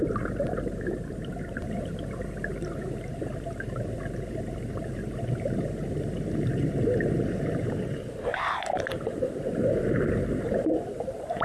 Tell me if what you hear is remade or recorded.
remade